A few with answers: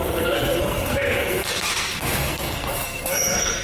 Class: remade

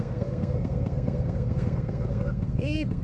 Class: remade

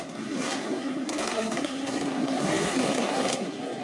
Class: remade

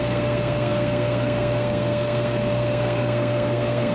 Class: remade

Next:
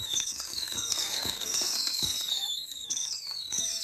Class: remade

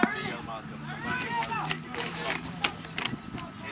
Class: recorded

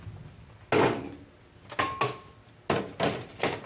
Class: recorded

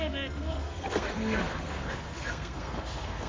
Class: remade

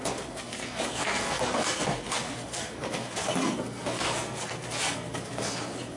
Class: remade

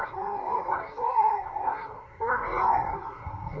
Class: remade